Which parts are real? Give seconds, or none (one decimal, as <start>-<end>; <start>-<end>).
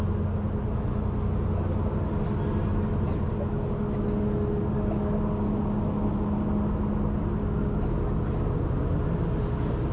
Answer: 0.0-9.9